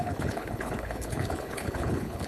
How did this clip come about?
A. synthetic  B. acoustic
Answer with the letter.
A